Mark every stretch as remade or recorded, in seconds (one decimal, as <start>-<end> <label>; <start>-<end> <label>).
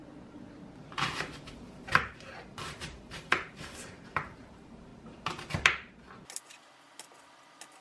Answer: 0.0-0.9 recorded; 0.9-4.9 remade; 4.9-7.8 recorded